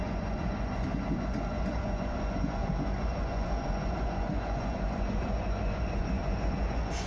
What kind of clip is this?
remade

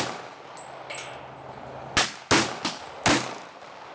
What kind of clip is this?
recorded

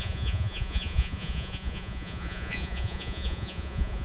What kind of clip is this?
remade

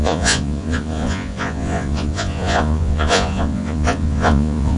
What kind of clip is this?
remade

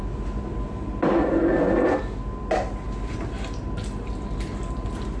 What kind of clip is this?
recorded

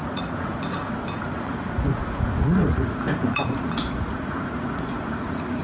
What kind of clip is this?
remade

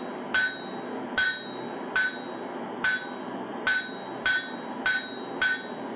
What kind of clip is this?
recorded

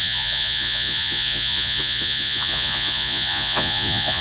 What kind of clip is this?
remade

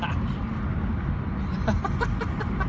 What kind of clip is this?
recorded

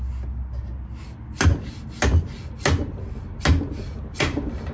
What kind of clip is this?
recorded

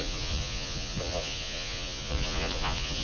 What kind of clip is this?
remade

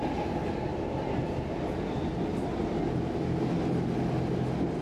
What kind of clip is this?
recorded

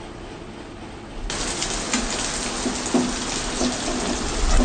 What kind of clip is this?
recorded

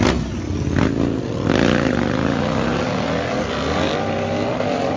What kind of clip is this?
recorded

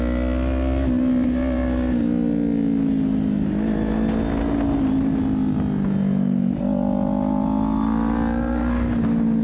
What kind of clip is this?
recorded